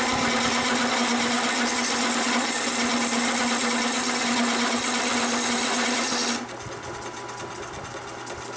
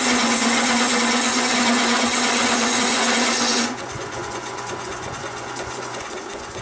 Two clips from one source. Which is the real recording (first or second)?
first